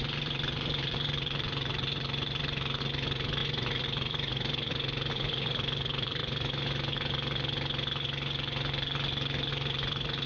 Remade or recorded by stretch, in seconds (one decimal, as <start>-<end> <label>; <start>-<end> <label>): 0.0-6.2 remade; 6.2-9.5 recorded; 9.5-10.3 remade